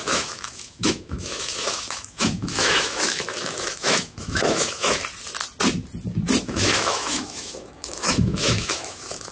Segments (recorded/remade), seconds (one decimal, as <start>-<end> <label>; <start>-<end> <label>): 0.0-5.0 remade; 5.0-6.4 recorded; 6.4-9.3 remade

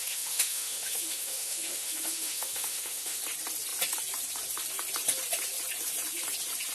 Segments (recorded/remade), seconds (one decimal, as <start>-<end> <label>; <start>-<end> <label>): 0.0-3.2 remade; 3.2-6.7 recorded

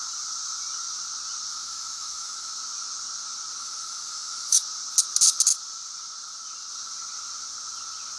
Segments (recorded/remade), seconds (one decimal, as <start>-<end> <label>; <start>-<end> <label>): 0.0-1.5 recorded; 1.5-2.5 remade; 2.5-3.6 recorded; 3.6-4.6 remade; 4.6-8.2 recorded

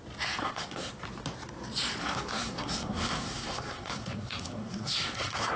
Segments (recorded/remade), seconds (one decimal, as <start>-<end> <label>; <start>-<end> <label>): 0.0-0.4 recorded; 0.4-0.9 remade; 0.9-2.0 recorded; 2.0-5.6 remade

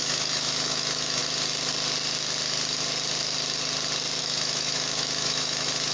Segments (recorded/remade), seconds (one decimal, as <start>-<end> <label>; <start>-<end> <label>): 0.0-1.2 remade; 1.2-4.2 recorded; 4.2-5.9 remade

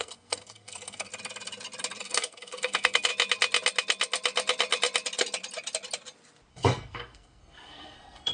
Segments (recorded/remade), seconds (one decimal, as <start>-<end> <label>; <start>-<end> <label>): 0.0-1.1 remade; 1.1-2.0 recorded; 2.0-3.1 remade; 3.1-6.5 recorded; 6.5-8.3 remade

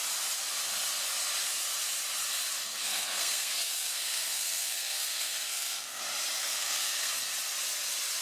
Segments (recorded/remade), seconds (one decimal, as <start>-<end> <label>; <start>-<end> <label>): 0.0-2.6 recorded; 2.6-6.0 remade; 6.0-6.4 recorded; 6.4-7.1 remade; 7.1-8.2 recorded

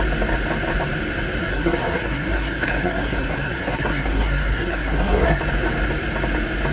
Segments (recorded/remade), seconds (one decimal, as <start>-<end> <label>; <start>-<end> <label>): 0.0-1.4 recorded; 1.4-5.4 remade; 5.4-6.7 recorded